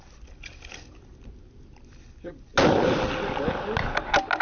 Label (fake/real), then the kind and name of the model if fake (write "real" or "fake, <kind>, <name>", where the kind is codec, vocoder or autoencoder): real